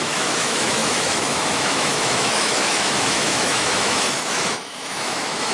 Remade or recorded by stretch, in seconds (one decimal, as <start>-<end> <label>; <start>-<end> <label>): 0.0-5.5 remade